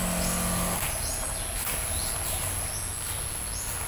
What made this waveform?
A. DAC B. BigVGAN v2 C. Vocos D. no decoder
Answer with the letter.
D